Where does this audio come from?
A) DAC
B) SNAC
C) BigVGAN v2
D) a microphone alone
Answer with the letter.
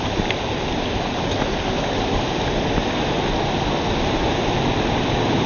D